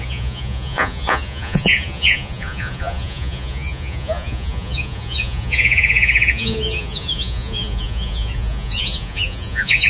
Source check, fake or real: fake